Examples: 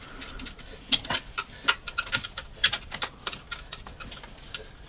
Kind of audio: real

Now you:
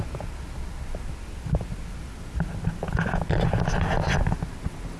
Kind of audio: real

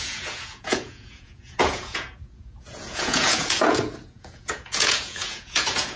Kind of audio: fake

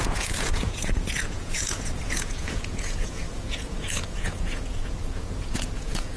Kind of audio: fake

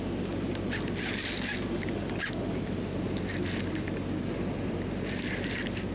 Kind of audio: real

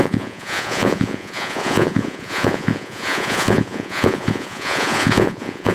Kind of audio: fake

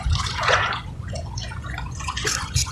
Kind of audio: fake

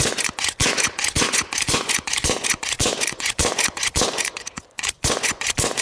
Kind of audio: fake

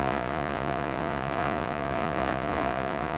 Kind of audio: fake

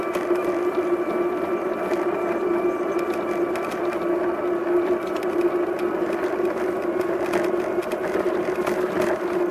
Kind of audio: real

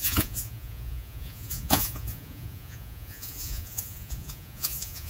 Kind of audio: fake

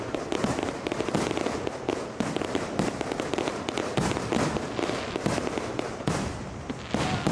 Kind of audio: real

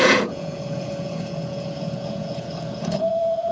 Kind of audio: fake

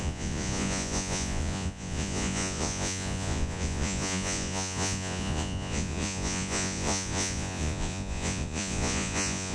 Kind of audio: fake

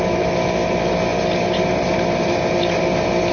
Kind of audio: real